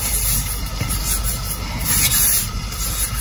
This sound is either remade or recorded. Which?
recorded